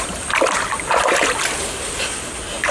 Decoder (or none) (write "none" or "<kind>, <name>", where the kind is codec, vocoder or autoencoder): none